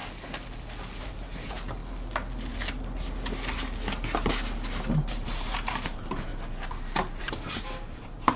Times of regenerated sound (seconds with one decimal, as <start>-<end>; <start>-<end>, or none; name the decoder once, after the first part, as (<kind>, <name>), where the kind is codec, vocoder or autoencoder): 1.0-1.8 (vocoder, BigVGAN v2); 5.1-6.3; 7.2-8.4